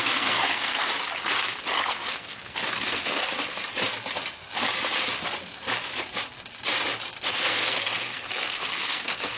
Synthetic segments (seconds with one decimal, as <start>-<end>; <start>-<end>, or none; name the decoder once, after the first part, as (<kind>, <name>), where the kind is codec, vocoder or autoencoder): 0.0-0.9 (codec, SNAC); 1.7-3.2; 7.3-9.4